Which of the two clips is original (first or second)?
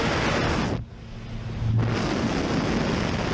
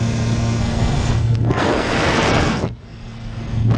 first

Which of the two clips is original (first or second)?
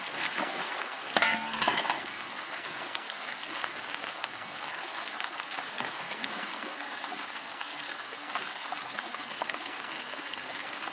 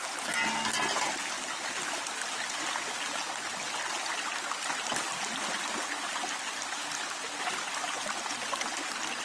second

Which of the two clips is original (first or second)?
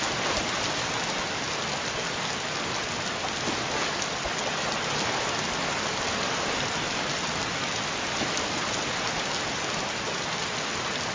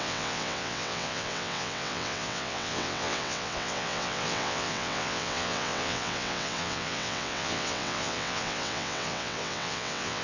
first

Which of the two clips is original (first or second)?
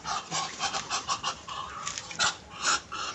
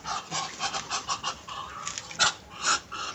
second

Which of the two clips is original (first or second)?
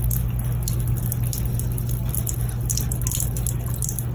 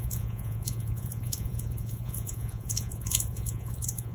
first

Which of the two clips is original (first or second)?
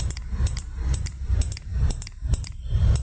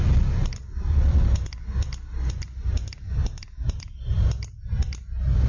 second